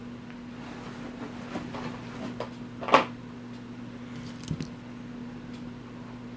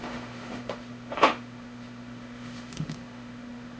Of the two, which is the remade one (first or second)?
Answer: second